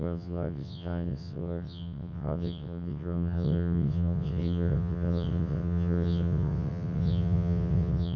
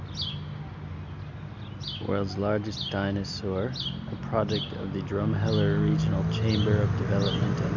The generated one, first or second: first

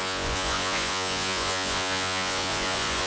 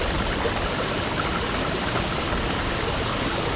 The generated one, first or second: first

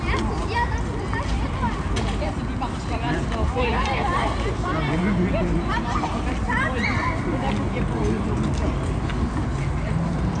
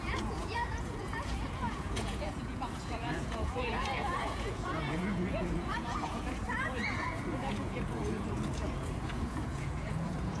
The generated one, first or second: second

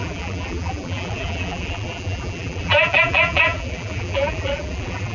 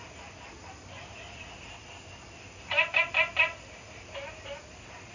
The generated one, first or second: first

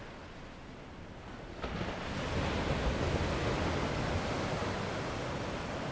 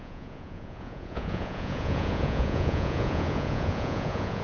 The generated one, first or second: second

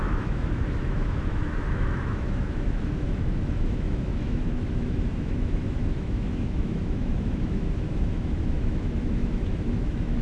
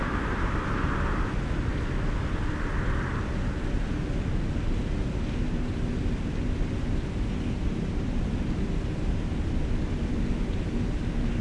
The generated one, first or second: first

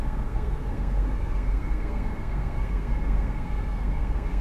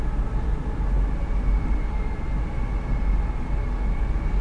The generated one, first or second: first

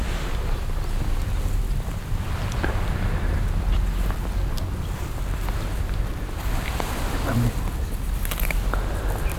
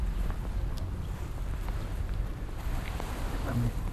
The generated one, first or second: second